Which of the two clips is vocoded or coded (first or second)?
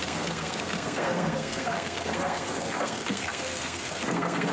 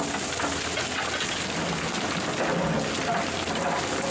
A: first